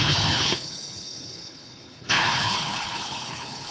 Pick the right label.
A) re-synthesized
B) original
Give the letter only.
A